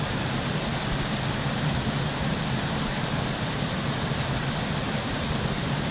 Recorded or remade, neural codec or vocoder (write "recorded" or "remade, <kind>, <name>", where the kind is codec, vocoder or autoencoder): recorded